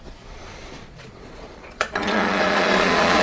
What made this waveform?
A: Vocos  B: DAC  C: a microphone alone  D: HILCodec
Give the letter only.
A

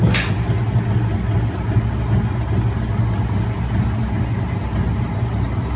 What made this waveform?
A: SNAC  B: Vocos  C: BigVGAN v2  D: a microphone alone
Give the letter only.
D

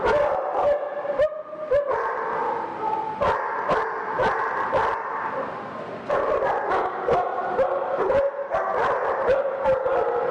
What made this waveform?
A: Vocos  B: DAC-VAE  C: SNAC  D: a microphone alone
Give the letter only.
D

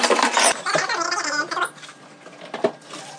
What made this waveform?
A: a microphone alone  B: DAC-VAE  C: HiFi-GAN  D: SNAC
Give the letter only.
A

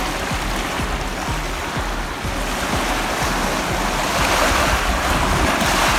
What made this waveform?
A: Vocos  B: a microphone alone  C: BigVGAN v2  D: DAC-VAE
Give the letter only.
B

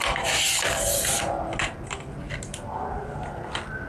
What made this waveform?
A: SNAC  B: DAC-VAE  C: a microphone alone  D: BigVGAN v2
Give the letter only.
C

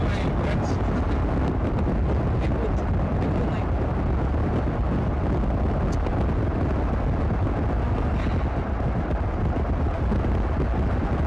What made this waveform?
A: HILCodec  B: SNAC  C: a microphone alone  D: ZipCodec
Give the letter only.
C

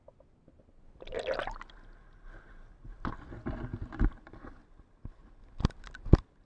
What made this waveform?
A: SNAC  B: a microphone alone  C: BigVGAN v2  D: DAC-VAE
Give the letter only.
B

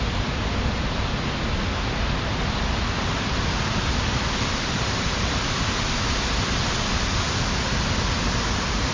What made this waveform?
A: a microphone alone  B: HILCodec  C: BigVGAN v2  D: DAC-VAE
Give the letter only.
A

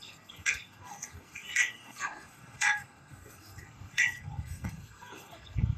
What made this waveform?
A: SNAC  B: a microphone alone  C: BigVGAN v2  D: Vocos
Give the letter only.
A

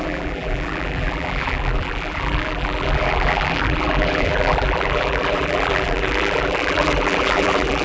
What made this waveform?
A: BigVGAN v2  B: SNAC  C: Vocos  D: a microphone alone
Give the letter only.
A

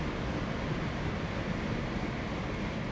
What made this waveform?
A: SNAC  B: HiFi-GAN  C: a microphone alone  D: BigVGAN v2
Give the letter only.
C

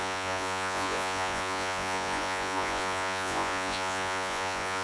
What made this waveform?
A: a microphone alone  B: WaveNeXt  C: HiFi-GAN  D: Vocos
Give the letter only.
D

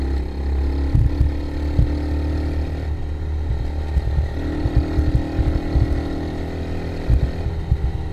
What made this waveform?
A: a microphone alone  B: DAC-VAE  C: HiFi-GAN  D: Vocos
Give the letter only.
A